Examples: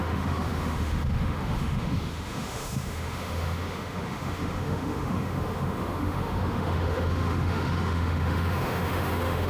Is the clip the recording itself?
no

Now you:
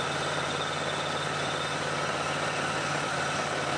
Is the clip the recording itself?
yes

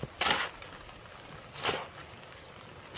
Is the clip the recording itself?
yes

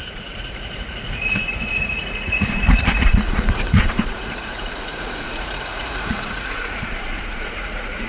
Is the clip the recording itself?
no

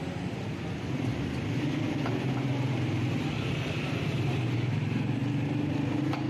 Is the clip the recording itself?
yes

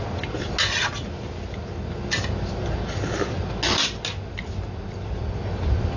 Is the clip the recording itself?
yes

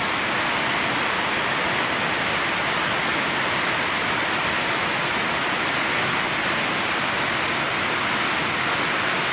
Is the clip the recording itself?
yes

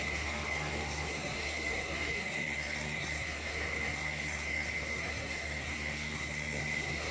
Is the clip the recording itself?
no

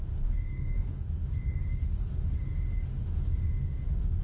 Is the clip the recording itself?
no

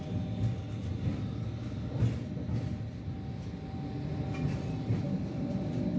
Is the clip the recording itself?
yes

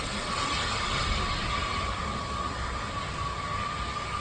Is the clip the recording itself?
yes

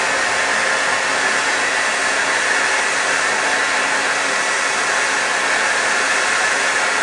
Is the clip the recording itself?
yes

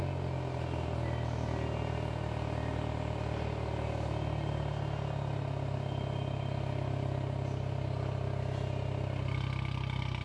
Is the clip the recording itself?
yes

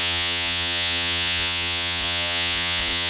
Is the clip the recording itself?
no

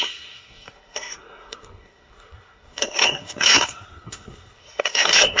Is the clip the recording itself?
no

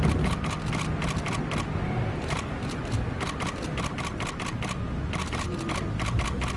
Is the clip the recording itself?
yes